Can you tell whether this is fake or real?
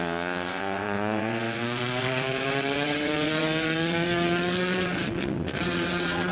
fake